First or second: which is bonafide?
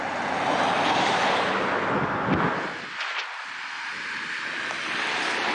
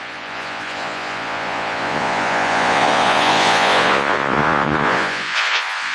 first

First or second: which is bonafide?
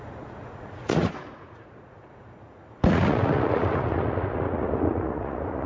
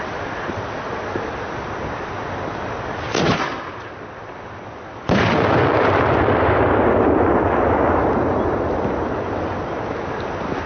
second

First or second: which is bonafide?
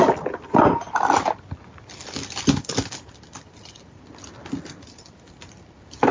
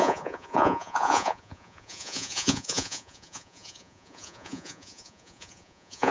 first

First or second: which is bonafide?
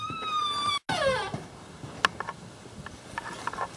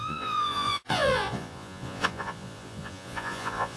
first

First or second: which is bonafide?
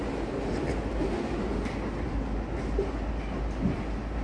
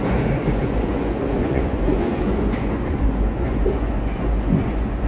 first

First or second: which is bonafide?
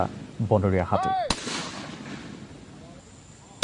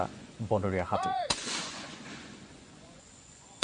first